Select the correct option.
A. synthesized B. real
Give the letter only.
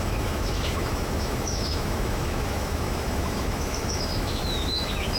A